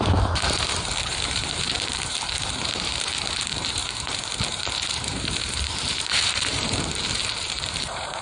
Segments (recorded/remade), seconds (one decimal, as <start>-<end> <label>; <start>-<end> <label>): 0.0-8.2 remade